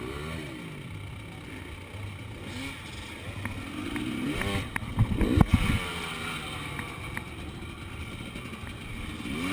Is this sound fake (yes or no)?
no